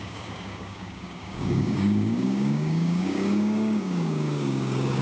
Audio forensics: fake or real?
fake